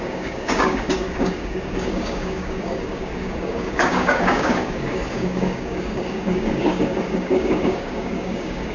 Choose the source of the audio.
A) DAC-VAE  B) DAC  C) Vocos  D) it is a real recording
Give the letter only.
B